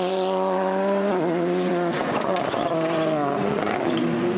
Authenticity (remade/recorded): remade